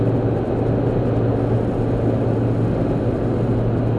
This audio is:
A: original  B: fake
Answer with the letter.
A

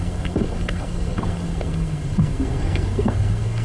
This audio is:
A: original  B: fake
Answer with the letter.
B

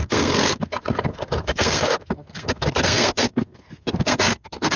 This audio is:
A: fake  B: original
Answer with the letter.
A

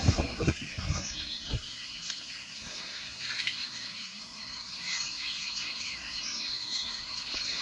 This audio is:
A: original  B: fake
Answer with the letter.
B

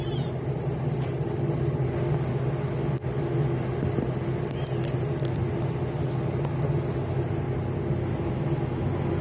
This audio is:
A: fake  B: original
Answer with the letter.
B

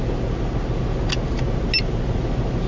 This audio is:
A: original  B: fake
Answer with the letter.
A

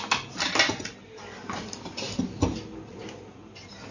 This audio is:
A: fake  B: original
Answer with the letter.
B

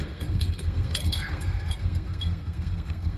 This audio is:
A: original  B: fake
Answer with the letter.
B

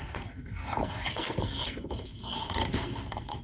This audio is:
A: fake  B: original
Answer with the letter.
A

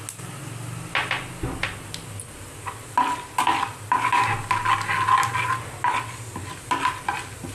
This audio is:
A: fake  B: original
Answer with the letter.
B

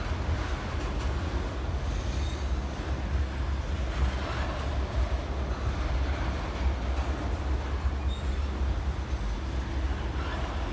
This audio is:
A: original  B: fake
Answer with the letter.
A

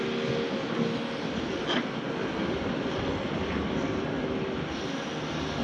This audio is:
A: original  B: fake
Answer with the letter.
A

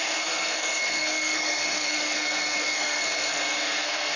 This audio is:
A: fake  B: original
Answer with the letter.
A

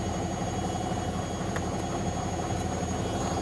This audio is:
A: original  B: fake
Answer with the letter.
A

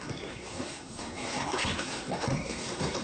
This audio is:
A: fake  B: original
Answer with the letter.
A